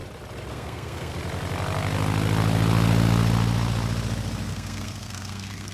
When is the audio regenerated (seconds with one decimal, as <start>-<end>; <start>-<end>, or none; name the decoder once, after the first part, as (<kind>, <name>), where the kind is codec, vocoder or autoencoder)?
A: 0.5-1.1 (codec, SNAC); 4.5-5.7